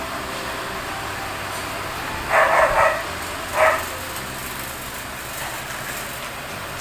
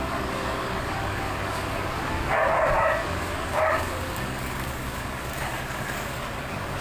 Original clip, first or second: first